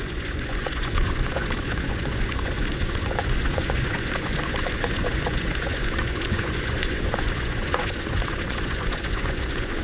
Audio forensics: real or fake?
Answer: fake